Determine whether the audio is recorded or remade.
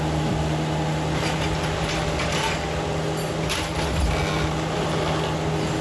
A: recorded